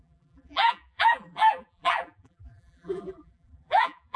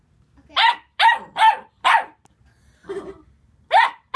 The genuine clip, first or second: second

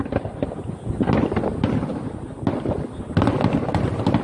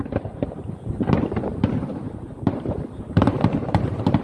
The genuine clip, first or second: first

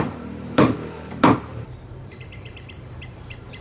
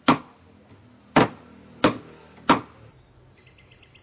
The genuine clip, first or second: second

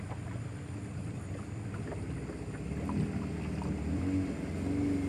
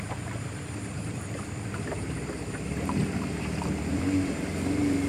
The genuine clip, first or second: first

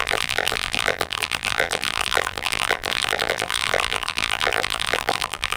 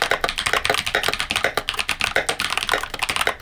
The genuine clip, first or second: second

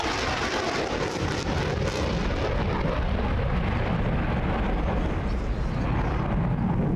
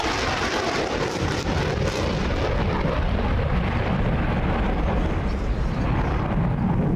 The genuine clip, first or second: first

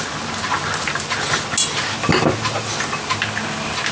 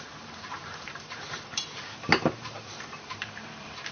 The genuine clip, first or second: first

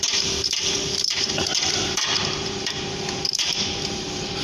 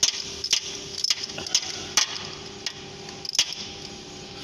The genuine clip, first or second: second